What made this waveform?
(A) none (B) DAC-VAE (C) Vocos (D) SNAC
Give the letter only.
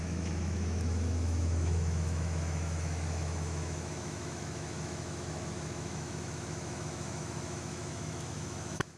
B